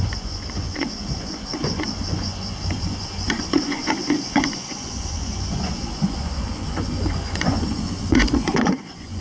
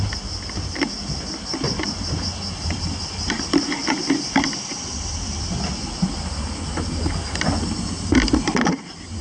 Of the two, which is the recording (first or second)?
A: second